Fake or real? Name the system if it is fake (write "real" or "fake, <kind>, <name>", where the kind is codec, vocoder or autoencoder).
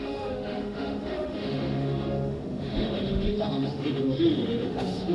fake, autoencoder, DAC-VAE